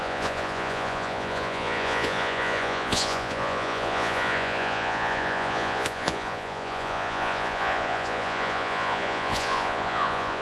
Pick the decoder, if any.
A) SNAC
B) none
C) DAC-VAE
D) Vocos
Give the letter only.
D